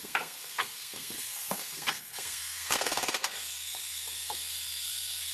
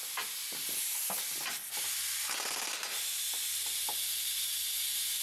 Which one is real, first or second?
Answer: second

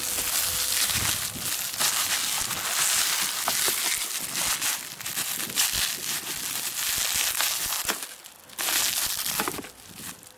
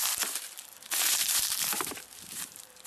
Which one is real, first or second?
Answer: first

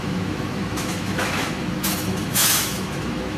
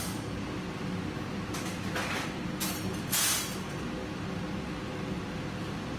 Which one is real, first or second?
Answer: second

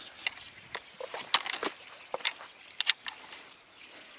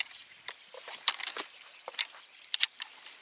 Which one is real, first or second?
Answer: first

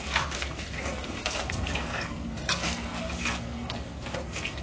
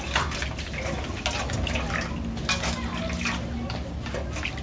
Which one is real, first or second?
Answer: second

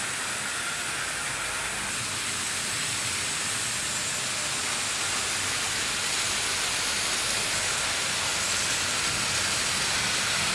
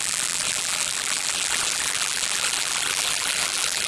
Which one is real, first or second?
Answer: first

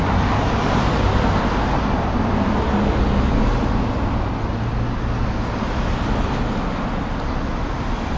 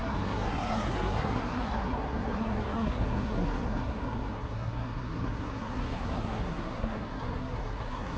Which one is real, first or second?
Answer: first